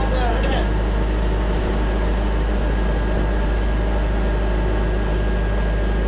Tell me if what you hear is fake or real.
real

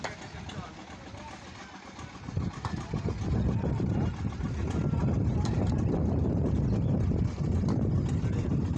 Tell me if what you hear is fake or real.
real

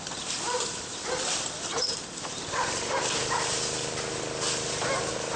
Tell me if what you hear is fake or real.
fake